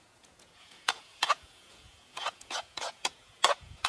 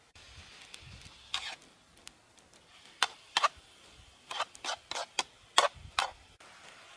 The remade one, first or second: first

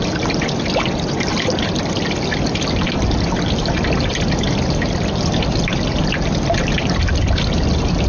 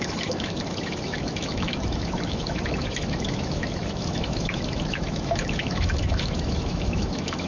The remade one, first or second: second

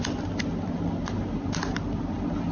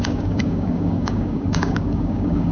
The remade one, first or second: second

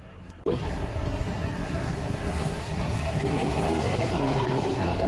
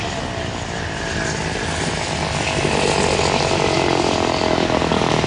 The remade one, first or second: first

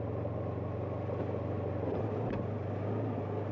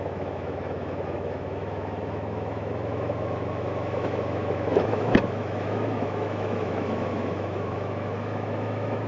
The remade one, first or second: second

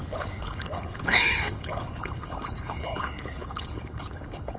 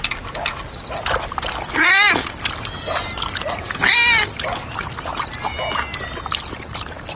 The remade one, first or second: first